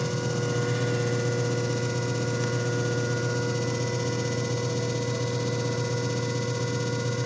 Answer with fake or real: real